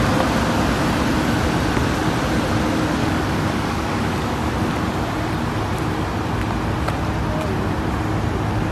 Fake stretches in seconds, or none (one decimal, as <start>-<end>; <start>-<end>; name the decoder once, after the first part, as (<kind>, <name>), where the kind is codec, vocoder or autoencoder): 3.0-4.5 (codec, DAC)